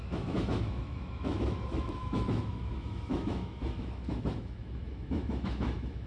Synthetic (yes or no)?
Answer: yes